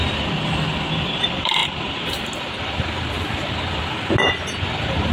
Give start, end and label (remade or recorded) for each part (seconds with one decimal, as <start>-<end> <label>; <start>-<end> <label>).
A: 0.0-5.1 recorded